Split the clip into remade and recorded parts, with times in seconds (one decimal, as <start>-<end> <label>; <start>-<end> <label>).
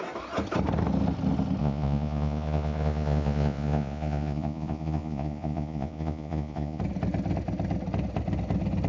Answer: 0.0-1.6 recorded; 1.6-6.8 remade; 6.8-8.9 recorded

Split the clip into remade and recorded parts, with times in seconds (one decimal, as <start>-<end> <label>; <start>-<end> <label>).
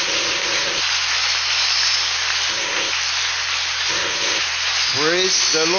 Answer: 0.0-0.8 remade; 0.8-2.5 recorded; 2.5-2.9 remade; 2.9-3.9 recorded; 3.9-4.4 remade; 4.4-5.8 recorded